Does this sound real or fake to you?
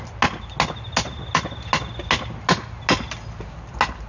real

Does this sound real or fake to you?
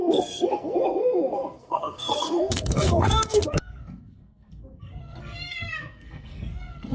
fake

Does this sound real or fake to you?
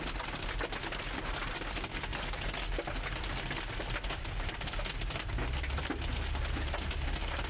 real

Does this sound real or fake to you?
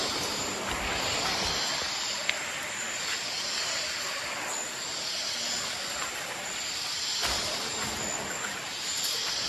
real